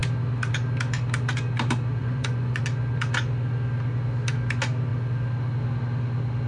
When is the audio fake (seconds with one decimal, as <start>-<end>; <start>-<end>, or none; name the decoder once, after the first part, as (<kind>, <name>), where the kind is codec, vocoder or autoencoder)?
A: 2.0-2.6 (vocoder, Vocos)